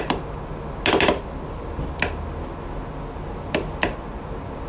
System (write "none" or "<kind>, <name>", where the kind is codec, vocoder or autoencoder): none